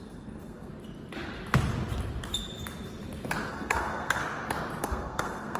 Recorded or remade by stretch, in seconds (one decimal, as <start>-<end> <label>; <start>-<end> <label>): 0.0-0.7 remade; 0.7-3.5 recorded; 3.5-4.2 remade; 4.2-4.8 recorded; 4.8-5.6 remade